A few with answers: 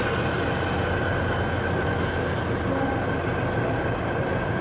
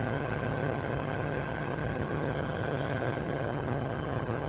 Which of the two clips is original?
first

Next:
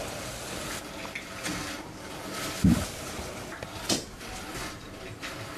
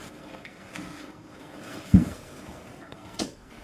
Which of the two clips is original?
first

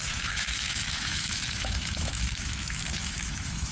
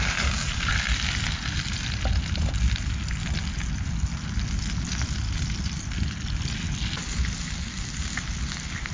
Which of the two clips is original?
second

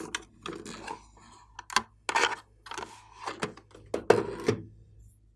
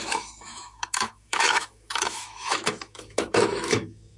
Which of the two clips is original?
first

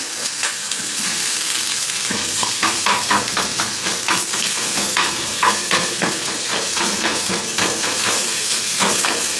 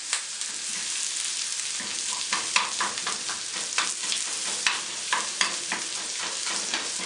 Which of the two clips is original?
second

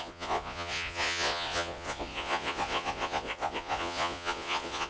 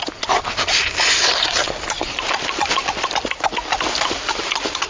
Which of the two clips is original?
second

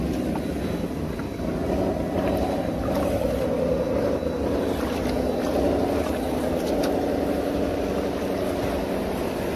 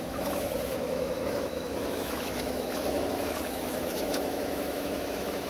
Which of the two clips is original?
first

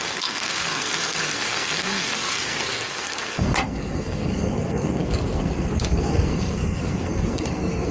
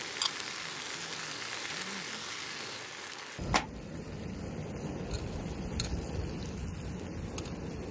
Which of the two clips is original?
second